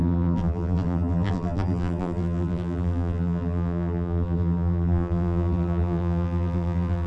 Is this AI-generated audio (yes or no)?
yes